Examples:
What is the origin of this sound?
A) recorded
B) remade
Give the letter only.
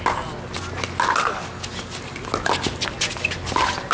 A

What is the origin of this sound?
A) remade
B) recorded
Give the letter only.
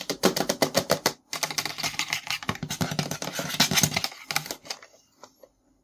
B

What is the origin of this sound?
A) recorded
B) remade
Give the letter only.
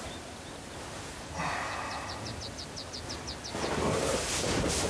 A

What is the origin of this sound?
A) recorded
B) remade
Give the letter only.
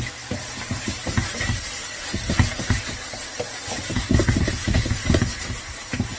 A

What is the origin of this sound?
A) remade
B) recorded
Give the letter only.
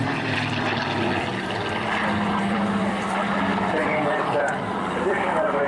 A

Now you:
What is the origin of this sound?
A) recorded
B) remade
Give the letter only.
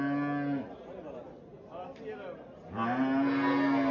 A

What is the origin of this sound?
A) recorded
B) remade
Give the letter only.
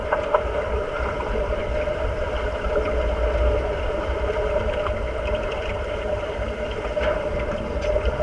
B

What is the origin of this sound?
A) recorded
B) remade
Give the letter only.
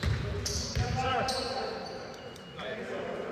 B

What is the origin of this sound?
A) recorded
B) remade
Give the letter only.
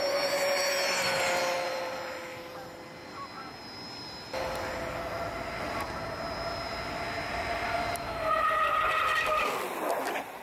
A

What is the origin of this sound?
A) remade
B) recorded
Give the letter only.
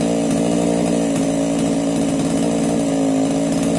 B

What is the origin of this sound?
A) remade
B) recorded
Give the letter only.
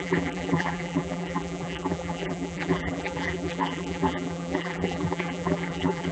A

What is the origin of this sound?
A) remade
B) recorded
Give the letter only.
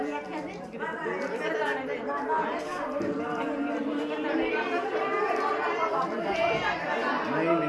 A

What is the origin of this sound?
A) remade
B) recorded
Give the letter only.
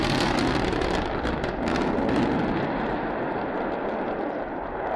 B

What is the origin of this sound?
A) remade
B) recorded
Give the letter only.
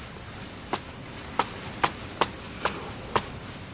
B